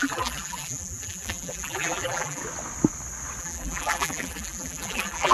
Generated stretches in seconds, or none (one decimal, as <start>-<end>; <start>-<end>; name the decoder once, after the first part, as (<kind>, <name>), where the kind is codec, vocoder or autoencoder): 0.0-2.4 (vocoder, BigVGAN v2); 3.4-5.3